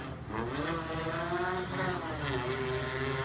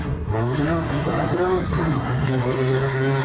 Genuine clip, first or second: first